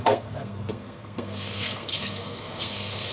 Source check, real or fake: fake